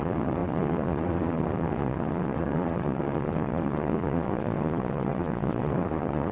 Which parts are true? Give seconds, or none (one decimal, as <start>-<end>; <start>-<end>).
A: none